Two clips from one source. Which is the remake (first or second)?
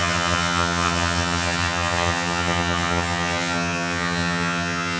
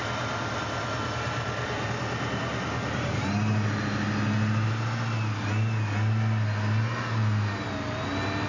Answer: first